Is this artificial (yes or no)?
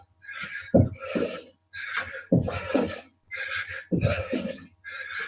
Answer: no